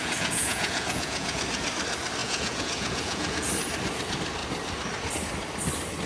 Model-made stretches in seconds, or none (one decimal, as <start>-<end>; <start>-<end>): 0.0-1.4; 2.2-3.5